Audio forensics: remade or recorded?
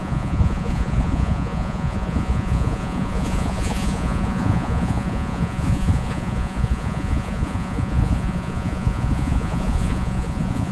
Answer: remade